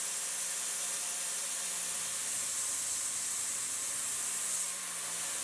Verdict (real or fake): real